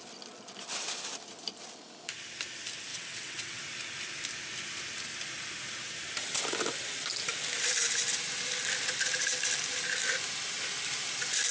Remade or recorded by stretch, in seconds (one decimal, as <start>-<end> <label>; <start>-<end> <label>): 0.0-2.9 recorded; 2.9-3.6 remade; 3.6-11.5 recorded

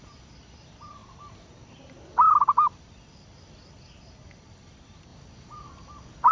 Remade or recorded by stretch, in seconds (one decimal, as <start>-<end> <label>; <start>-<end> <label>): 0.0-6.3 recorded

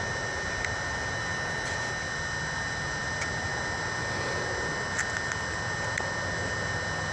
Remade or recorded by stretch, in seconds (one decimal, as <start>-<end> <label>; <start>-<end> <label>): 0.0-7.1 recorded

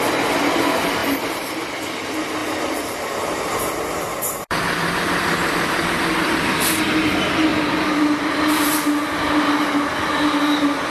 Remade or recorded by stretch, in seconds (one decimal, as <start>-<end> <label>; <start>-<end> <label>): 0.0-2.4 recorded; 2.4-6.8 remade; 6.8-10.9 recorded

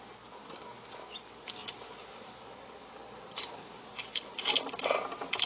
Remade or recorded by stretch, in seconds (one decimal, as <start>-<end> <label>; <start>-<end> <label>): 0.0-5.5 recorded

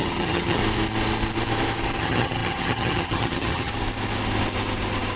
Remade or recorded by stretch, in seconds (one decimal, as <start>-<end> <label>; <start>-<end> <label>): 0.0-0.6 remade; 0.6-2.0 recorded; 2.0-3.7 remade; 3.7-5.2 recorded